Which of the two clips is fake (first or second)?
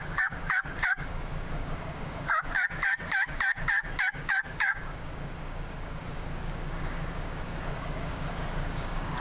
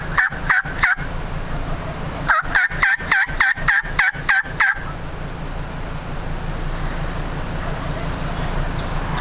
first